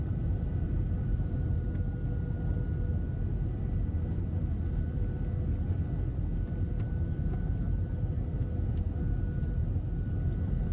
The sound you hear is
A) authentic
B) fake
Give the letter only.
A